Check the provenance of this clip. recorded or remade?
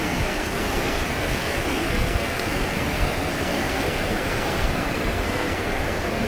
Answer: remade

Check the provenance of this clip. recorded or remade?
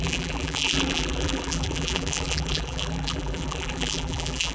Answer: remade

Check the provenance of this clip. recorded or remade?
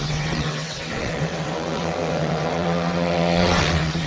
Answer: remade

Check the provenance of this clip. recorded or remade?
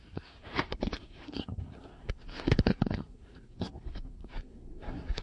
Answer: remade